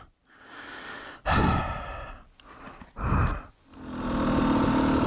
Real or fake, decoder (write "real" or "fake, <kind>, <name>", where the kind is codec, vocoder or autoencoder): real